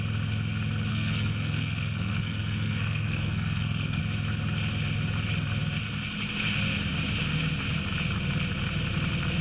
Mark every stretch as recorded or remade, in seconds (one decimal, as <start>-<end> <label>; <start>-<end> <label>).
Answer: 0.0-0.9 recorded; 0.9-4.0 remade; 4.0-9.4 recorded